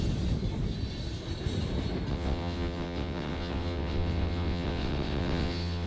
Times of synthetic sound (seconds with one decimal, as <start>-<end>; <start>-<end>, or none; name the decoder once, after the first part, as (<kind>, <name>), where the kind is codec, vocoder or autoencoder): 2.1-5.9 (vocoder, WaveNeXt)